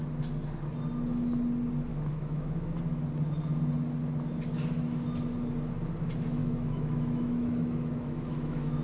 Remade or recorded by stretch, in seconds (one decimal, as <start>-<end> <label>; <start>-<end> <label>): 0.0-1.9 recorded; 1.9-2.8 remade; 2.8-6.4 recorded; 6.4-8.8 remade